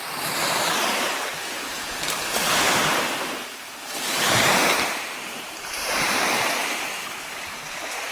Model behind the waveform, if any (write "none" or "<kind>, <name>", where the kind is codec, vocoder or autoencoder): vocoder, BigVGAN v2